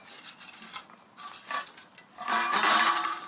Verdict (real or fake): real